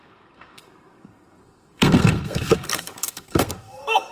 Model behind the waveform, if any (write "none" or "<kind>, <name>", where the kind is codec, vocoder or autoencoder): codec, SNAC